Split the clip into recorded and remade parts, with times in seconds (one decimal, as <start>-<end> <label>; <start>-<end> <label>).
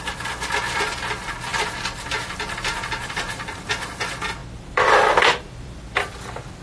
0.0-4.4 recorded; 4.4-6.0 remade; 6.0-6.6 recorded